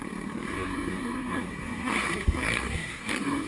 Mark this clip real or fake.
fake